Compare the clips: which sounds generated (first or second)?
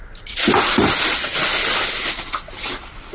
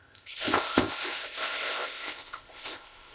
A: second